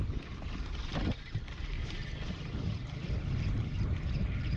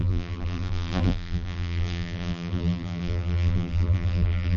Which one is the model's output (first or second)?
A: second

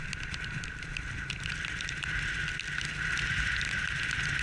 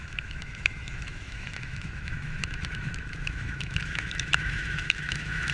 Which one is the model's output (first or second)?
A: second